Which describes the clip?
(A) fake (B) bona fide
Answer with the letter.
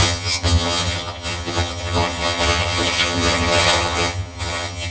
A